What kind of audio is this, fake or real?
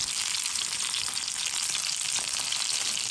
real